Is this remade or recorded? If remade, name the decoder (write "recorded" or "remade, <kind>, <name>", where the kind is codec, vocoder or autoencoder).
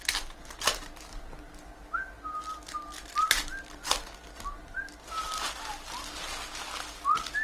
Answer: recorded